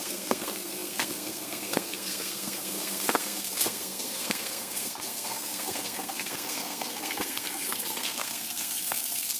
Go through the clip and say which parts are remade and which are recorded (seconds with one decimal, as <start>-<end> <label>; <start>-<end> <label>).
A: 0.0-9.4 remade